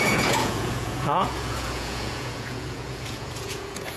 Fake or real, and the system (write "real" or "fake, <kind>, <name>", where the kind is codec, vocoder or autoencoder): fake, vocoder, Vocos